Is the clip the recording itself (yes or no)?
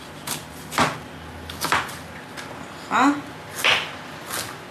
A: yes